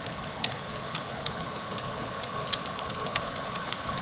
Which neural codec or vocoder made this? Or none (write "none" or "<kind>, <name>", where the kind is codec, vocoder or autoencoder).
codec, HILCodec